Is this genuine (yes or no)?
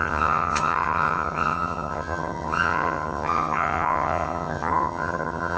no